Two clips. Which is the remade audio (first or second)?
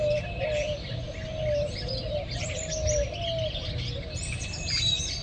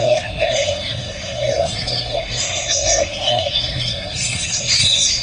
second